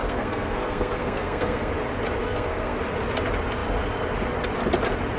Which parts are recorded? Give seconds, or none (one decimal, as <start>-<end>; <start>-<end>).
1.7-2.2; 2.8-5.2